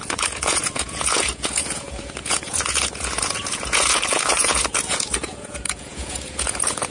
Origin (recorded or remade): remade